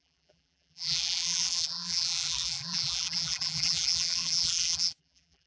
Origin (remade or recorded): remade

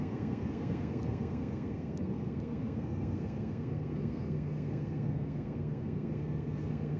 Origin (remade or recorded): remade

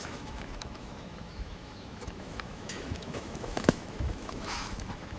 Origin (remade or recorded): remade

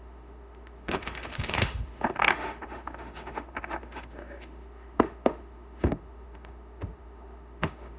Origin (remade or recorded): remade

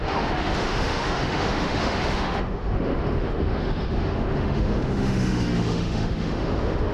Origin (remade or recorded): remade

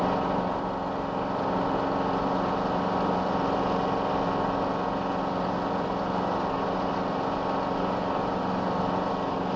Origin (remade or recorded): recorded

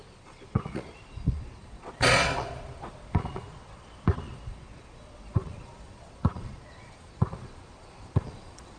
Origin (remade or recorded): remade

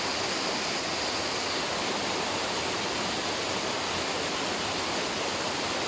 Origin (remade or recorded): recorded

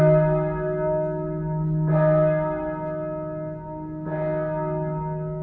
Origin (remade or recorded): recorded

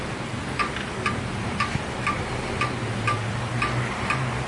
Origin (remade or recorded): recorded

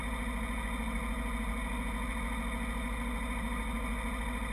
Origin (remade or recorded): recorded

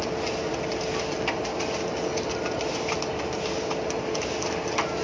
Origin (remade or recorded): recorded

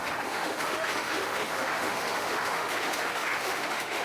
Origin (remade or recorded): remade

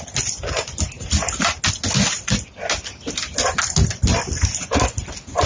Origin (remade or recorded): recorded